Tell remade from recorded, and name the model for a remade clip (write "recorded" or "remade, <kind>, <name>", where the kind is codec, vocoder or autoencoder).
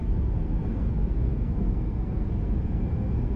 remade, codec, SNAC